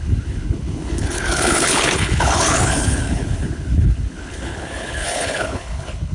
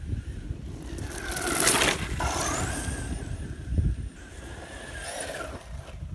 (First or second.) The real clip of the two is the second